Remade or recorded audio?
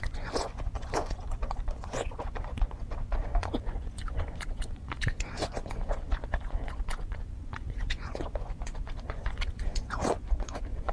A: remade